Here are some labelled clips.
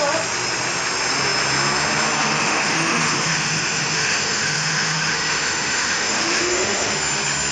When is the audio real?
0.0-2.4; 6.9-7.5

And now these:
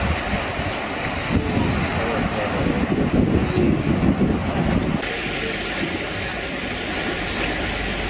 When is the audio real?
0.0-8.1

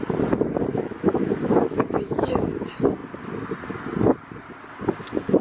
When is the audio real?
0.0-0.7; 2.6-5.4

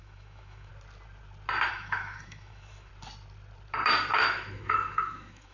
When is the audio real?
0.7-1.7; 2.9-4.1

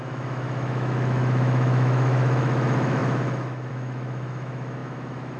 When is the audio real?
none

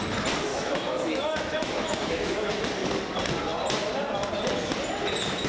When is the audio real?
0.0-0.5; 2.5-5.5

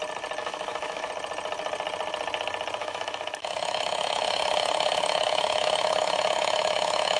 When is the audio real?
0.0-0.4; 1.1-2.8